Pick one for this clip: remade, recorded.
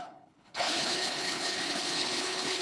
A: remade